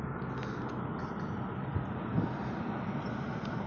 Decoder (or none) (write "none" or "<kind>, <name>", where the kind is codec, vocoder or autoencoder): none